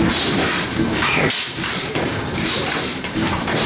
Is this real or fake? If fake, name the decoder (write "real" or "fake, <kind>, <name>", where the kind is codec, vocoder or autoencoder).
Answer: fake, vocoder, BigVGAN v2